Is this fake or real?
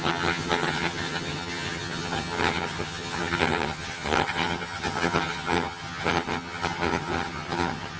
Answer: fake